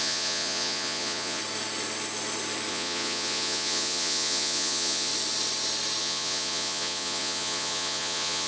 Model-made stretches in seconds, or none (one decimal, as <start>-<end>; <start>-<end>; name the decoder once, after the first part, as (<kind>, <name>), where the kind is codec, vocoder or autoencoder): 0.0-1.4 (vocoder, Vocos); 2.7-5.1; 6.0-8.5